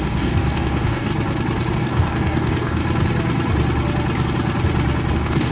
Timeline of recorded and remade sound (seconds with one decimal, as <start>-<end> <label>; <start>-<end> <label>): 0.0-1.1 remade; 1.1-1.7 recorded; 1.7-2.8 remade; 2.8-5.1 recorded; 5.1-5.5 remade